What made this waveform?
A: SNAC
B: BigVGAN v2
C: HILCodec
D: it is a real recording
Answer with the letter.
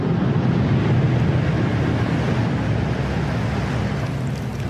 D